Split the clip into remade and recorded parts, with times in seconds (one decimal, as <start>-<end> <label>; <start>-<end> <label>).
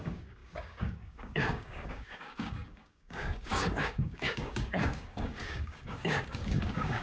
0.0-7.0 remade